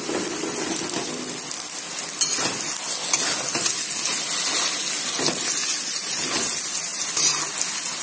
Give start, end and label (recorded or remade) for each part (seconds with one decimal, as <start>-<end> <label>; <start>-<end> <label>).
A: 0.0-8.0 recorded